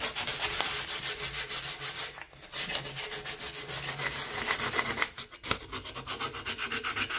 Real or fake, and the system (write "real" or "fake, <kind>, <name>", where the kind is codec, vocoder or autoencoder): real